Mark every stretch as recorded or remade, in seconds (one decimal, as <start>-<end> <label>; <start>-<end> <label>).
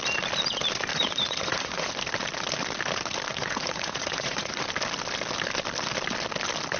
0.0-0.9 recorded; 0.9-1.9 remade; 1.9-3.3 recorded; 3.3-4.6 remade; 4.6-6.8 recorded